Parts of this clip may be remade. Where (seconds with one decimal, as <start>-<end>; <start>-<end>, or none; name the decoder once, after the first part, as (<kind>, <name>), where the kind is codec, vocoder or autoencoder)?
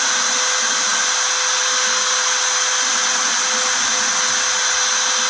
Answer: none